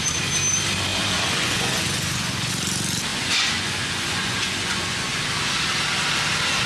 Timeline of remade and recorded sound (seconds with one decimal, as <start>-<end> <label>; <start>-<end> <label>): 0.0-0.9 recorded; 0.9-2.5 remade; 2.5-3.1 recorded; 3.1-5.3 remade; 5.3-6.7 recorded